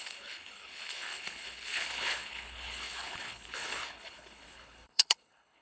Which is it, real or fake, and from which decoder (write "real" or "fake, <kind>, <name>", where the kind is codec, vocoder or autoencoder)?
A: fake, codec, HILCodec